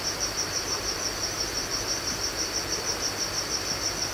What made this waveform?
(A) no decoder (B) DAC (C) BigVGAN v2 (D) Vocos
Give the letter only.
A